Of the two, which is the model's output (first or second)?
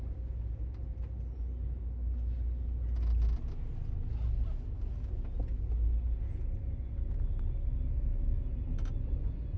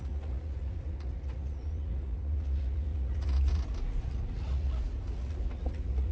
second